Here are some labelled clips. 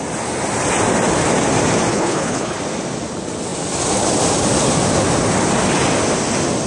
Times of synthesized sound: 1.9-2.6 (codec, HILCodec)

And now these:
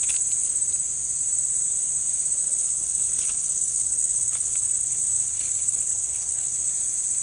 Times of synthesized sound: 2.4-6.7 (codec, HILCodec)

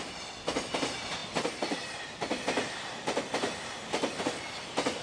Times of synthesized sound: none

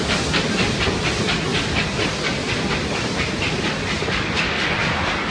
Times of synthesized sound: none

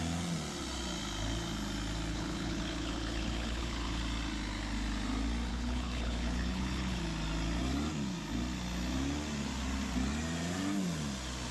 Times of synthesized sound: 2.1-4.0 (codec, HILCodec); 5.5-7.0

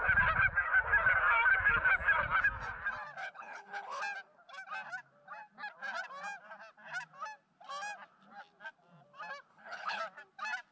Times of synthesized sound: 3.2-4.0 (codec, HILCodec); 9.5-10.0

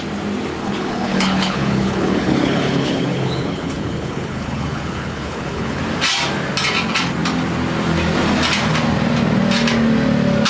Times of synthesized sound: 0.6-5.8 (codec, HILCodec)

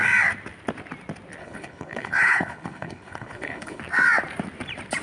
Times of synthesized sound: 1.4-3.8 (codec, HILCodec)